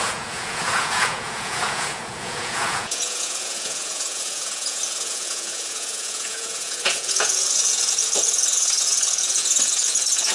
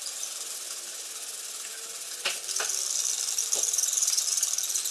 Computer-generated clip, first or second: first